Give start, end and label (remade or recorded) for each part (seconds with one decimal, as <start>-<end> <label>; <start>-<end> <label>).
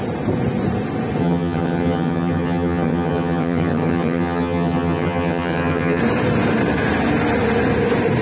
0.0-1.2 recorded; 1.2-6.0 remade; 6.0-8.2 recorded